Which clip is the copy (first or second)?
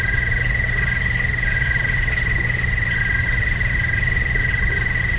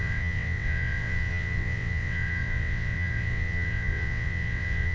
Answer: second